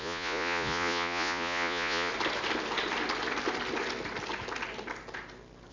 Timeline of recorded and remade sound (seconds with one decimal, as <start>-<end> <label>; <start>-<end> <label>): 0.0-2.1 remade; 2.1-5.7 recorded